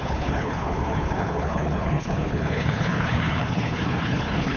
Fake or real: fake